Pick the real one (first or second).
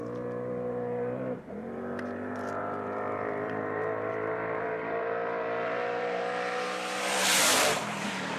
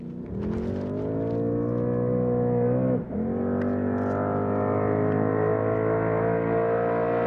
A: second